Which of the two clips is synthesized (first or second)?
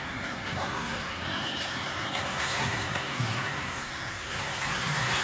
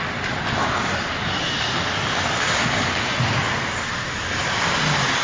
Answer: first